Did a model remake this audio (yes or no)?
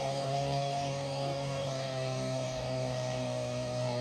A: yes